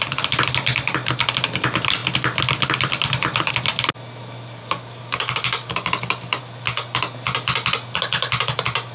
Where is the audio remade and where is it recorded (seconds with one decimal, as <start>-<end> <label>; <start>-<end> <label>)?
0.0-4.6 recorded; 4.6-6.4 remade; 6.4-8.9 recorded